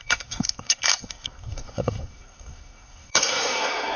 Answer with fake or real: fake